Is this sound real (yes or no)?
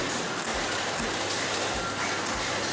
yes